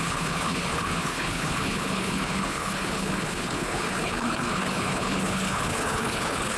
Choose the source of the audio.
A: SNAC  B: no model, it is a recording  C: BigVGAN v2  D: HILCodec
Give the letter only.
D